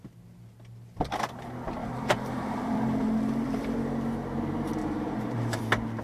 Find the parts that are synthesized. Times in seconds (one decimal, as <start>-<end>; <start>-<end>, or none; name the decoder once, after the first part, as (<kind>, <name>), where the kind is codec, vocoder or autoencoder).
1.8-3.8 (vocoder, BigVGAN v2); 4.8-5.6